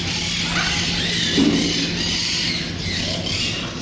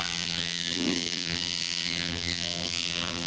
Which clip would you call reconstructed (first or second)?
second